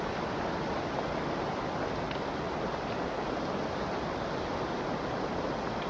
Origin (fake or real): real